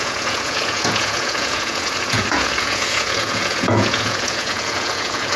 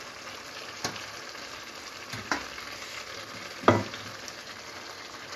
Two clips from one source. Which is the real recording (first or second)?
second